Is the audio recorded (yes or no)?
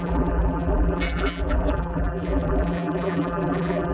no